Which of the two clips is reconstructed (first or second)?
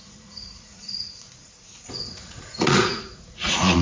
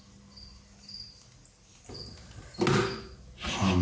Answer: first